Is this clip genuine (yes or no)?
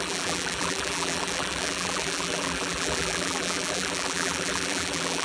no